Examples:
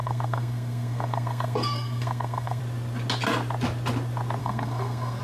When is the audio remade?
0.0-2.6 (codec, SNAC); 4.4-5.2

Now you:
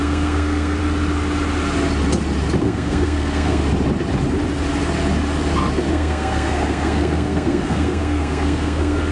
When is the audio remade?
0.0-0.8 (codec, SNAC); 2.6-3.6; 5.9-9.1

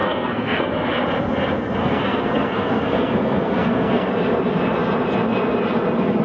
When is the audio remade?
0.0-0.7 (codec, SNAC); 1.8-4.1

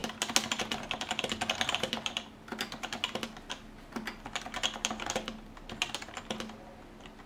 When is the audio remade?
none

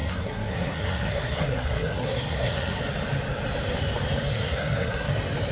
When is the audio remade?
0.0-2.8 (codec, SNAC); 4.3-5.1